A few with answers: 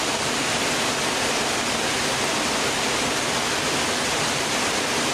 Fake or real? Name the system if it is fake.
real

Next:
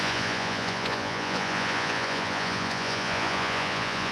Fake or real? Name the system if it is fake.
fake, vocoder, Vocos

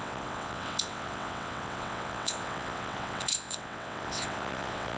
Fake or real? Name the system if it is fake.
fake, vocoder, WaveNeXt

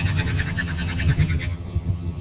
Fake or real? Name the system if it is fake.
fake, vocoder, HiFi-GAN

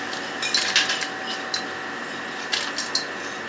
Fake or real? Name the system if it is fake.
real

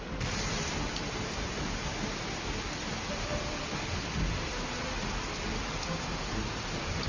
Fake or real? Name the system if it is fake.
real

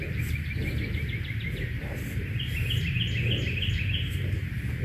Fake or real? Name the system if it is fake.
real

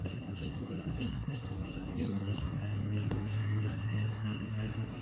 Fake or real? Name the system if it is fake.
fake, codec, SNAC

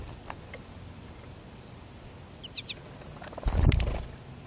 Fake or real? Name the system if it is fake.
real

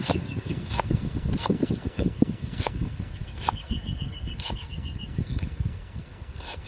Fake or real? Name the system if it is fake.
fake, codec, SNAC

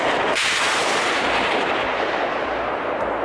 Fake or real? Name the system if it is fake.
fake, vocoder, BigVGAN v2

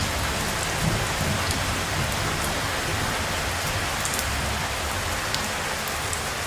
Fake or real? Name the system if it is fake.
real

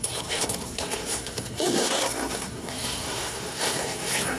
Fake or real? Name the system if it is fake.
fake, codec, SNAC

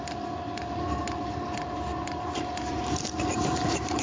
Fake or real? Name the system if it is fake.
real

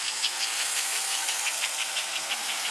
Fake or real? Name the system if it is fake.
fake, codec, SNAC